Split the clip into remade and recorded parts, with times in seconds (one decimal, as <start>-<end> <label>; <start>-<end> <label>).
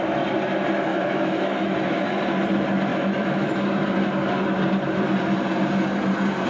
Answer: 0.0-0.9 recorded; 0.9-2.2 remade; 2.2-2.9 recorded; 2.9-3.5 remade; 3.5-6.5 recorded